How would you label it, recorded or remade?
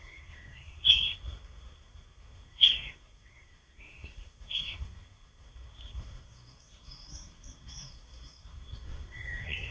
remade